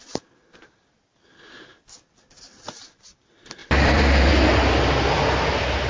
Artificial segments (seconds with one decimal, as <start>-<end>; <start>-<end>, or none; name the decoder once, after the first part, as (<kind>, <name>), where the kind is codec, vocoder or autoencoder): 3.6-4.3 (vocoder, BigVGAN v2)